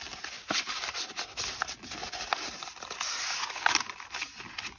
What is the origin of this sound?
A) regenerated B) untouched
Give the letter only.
B